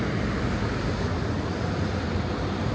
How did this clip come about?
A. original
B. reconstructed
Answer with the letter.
A